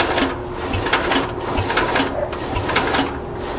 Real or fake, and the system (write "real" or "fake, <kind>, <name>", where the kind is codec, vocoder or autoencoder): real